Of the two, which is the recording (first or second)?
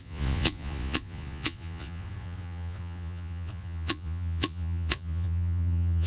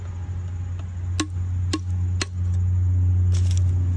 second